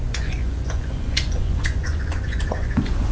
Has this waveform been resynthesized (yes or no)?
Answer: yes